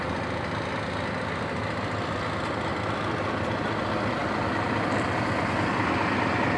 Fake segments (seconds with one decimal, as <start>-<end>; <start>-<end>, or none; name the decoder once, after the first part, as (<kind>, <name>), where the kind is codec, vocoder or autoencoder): none